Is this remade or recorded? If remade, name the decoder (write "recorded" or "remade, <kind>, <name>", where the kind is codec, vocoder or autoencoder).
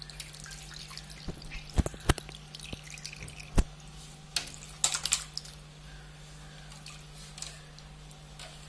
recorded